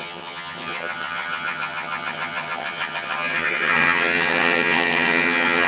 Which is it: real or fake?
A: fake